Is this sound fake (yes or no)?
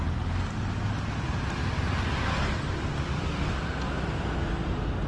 no